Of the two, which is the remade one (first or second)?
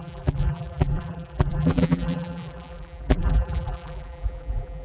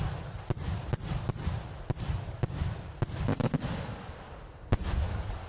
first